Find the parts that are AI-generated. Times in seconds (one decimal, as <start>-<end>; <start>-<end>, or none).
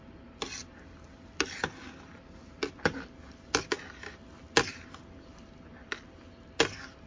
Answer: none